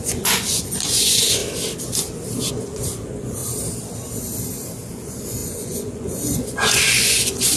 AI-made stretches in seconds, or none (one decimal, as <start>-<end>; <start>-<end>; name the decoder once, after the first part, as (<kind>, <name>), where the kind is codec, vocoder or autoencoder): 0.0-1.4 (vocoder, Vocos); 2.5-3.4; 4.9-7.6